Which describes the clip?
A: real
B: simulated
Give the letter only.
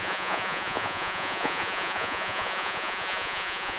B